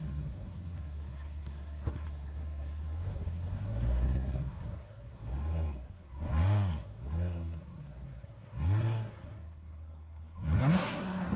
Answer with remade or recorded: remade